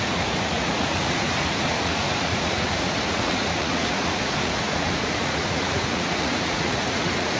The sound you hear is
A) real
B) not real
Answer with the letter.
B